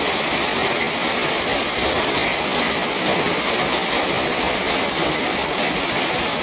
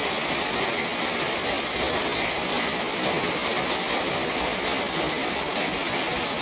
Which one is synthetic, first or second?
first